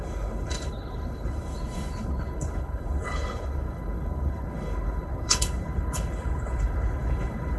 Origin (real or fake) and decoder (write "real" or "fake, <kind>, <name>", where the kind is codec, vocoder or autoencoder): fake, codec, HILCodec